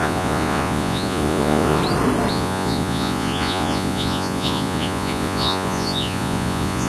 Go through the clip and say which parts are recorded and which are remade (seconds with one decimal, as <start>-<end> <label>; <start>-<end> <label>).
0.0-1.8 remade; 1.8-2.3 recorded; 2.3-6.9 remade